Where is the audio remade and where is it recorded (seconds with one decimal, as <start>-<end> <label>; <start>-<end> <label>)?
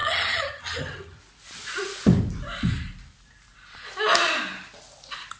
0.0-1.2 remade; 1.2-5.4 recorded